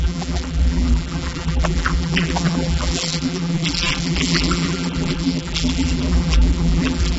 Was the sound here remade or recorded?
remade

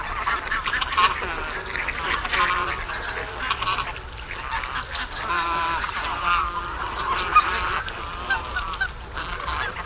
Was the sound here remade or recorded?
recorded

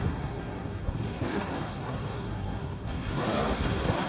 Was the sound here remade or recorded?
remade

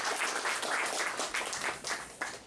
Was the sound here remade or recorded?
recorded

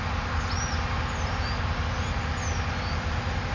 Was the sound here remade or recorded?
recorded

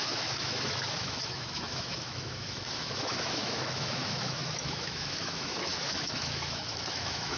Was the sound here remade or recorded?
remade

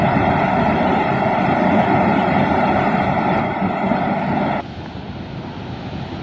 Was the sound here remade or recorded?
recorded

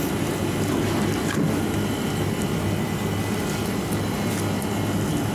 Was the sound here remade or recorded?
recorded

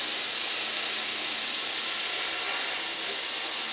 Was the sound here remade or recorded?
recorded